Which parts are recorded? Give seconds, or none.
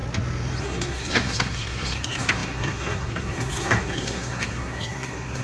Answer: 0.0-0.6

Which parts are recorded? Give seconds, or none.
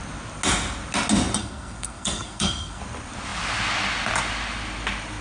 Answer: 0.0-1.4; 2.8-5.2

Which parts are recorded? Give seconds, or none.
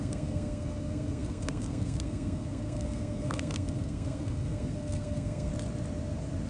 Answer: 5.5-6.5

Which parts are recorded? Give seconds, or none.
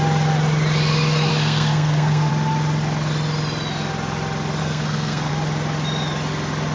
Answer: 0.0-1.3; 2.3-4.6; 5.3-6.7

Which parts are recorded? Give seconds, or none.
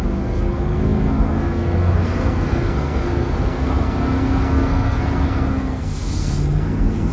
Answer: none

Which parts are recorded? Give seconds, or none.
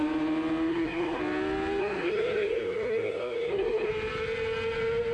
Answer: 0.0-0.7; 1.2-1.8; 3.9-5.1